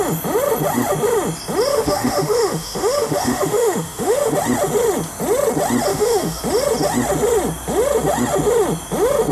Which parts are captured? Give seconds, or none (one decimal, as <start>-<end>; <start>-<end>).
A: 0.0-1.7; 4.3-5.9; 6.4-9.3